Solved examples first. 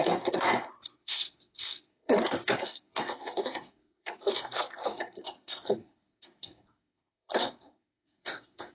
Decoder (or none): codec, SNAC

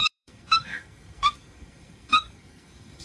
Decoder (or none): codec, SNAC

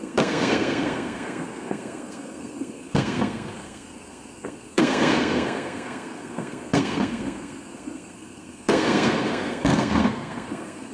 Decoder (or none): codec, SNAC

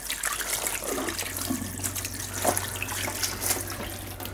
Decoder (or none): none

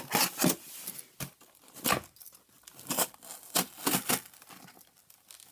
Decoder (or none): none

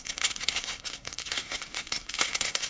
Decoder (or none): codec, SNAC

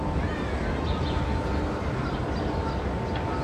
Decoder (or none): none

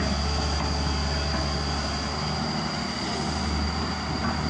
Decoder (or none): none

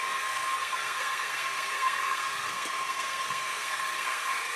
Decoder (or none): codec, SNAC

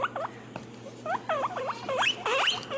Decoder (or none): none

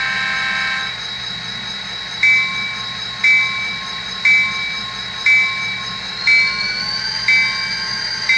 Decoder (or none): none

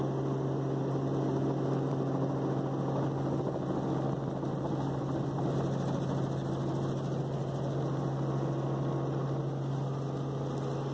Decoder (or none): none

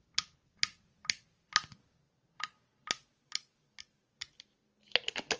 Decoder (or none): none